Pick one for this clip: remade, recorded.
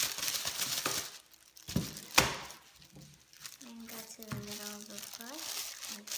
recorded